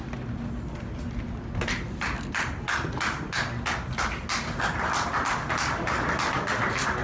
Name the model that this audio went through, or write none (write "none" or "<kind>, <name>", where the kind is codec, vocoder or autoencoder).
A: none